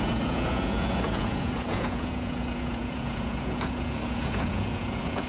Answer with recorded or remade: remade